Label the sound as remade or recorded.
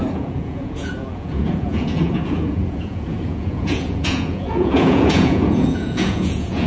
remade